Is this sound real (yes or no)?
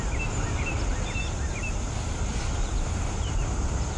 yes